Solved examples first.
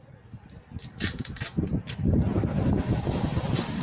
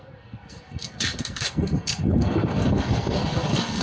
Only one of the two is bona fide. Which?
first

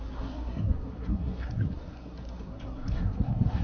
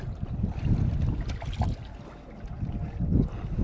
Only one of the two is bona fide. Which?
second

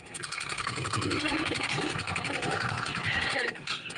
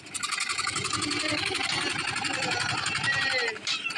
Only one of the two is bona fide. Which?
second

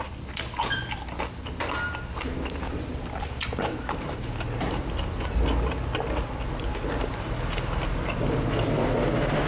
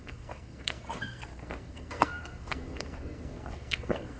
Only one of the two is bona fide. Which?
first